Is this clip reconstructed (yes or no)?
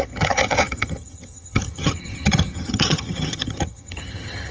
yes